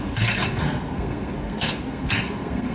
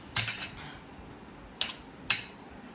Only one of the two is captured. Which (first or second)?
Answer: second